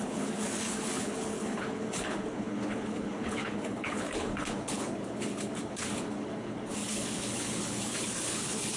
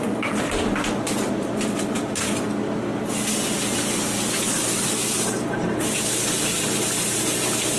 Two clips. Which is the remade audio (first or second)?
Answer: first